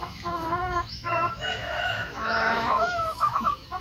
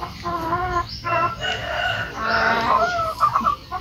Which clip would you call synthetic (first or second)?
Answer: first